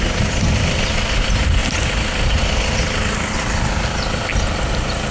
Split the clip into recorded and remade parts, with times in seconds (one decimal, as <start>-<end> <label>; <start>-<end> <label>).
0.0-5.1 recorded